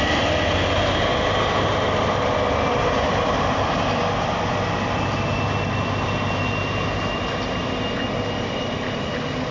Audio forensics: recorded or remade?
recorded